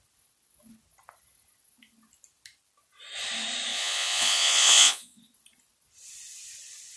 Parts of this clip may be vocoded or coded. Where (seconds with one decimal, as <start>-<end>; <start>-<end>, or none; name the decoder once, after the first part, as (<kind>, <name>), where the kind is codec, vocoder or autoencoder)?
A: 3.7-5.2 (vocoder, Vocos)

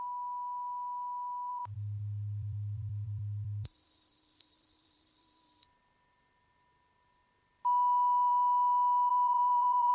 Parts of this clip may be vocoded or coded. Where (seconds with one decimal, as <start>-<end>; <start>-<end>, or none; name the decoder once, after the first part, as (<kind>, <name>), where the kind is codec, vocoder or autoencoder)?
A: 1.5-5.8 (vocoder, BigVGAN v2); 9.1-9.9

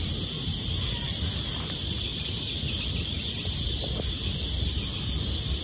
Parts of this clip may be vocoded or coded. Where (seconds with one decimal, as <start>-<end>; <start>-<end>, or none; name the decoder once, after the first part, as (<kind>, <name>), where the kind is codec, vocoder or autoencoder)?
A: none